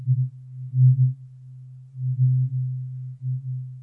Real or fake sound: real